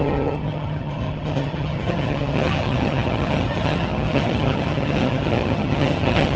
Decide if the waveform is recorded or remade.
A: remade